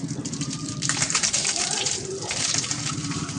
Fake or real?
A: fake